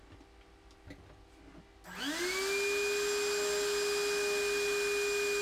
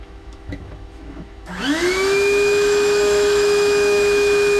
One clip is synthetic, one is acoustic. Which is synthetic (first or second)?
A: second